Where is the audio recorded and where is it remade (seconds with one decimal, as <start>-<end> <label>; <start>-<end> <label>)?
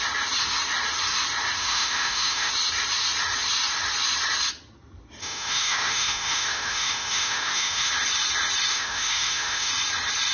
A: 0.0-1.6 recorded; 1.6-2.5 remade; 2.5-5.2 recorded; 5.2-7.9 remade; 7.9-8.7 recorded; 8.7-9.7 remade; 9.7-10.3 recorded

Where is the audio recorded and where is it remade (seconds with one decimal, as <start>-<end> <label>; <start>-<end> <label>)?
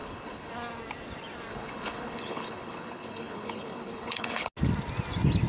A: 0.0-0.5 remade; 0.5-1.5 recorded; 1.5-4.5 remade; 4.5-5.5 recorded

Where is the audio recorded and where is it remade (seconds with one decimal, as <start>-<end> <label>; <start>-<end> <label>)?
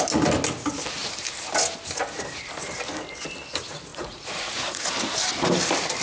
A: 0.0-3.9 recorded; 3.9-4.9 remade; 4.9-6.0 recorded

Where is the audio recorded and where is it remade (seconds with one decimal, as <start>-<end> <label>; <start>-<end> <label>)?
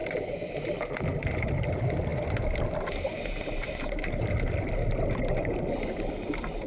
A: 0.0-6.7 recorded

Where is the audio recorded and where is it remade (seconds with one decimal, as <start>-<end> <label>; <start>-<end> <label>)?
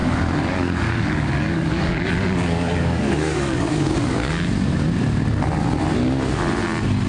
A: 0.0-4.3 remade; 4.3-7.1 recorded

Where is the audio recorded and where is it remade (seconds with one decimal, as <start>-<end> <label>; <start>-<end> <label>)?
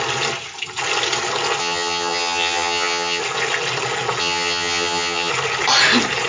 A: 0.0-1.6 recorded; 1.6-3.2 remade; 3.2-4.2 recorded; 4.2-5.3 remade; 5.3-6.3 recorded